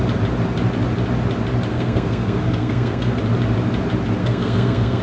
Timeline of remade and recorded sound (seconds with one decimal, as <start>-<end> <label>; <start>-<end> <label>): 0.0-1.7 recorded; 1.7-3.2 remade; 3.2-4.2 recorded; 4.2-5.0 remade